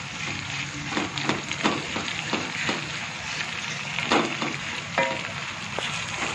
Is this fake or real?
real